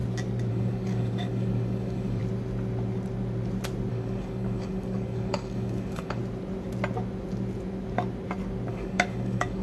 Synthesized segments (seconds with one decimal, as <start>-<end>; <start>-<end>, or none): 0.5-2.2; 3.9-6.2; 8.7-9.6